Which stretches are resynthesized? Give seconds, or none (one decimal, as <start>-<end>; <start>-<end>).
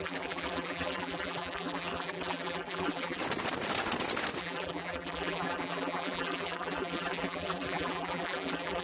0.0-3.2; 4.4-8.8